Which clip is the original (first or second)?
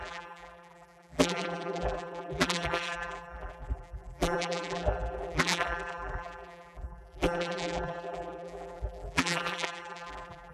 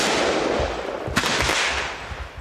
second